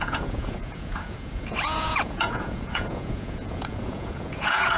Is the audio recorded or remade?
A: remade